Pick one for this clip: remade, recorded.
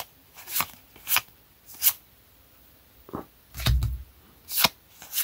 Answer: recorded